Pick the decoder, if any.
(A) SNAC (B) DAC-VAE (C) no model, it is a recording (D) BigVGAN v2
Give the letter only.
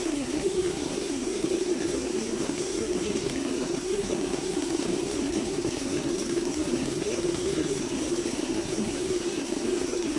A